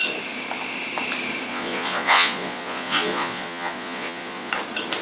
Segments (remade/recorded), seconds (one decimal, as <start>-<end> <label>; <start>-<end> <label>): 0.0-1.5 recorded; 1.5-4.5 remade; 4.5-5.0 recorded